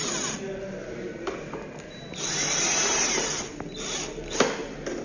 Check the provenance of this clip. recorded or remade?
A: recorded